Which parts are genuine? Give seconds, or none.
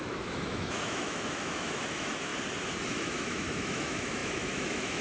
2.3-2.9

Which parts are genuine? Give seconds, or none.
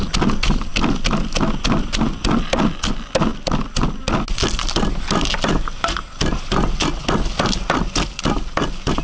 0.0-9.0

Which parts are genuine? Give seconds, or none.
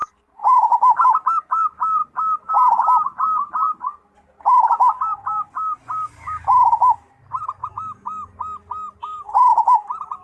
0.0-7.6; 8.3-10.2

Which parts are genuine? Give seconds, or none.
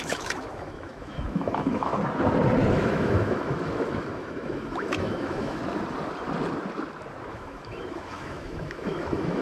1.9-2.7; 5.6-7.3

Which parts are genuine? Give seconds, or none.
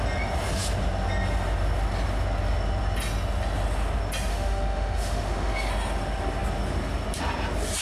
0.0-4.3; 5.7-7.8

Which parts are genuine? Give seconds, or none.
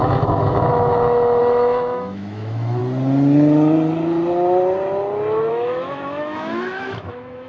2.8-5.5